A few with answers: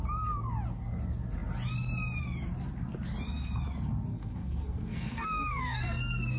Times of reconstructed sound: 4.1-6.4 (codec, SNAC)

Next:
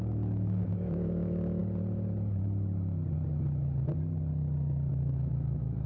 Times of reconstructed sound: 0.0-1.6 (autoencoder, DAC-VAE); 4.9-5.9

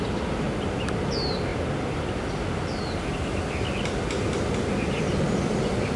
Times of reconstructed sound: none

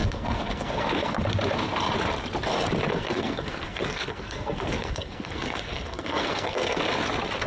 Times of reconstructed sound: 0.0-1.2 (codec, SNAC); 2.9-6.8

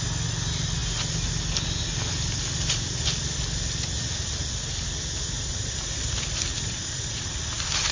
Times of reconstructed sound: none

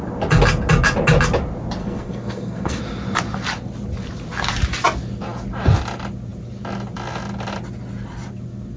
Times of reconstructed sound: 1.8-2.8 (codec, SNAC)